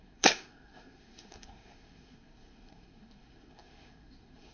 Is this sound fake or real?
fake